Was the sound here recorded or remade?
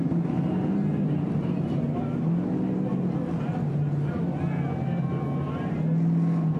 recorded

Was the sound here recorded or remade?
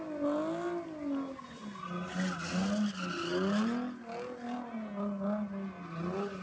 recorded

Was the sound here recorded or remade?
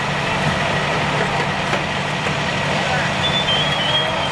recorded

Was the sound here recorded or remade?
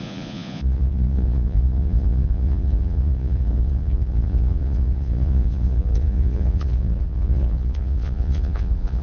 remade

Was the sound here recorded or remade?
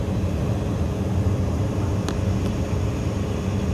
recorded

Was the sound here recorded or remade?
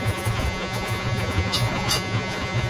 remade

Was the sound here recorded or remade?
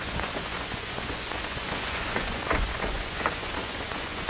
remade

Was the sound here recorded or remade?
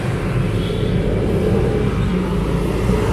recorded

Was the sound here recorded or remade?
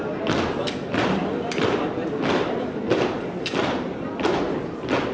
recorded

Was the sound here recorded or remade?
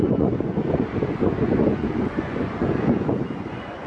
remade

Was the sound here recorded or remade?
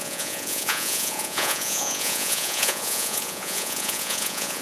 remade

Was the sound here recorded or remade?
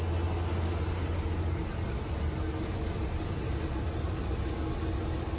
recorded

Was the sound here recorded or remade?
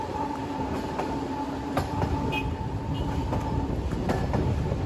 recorded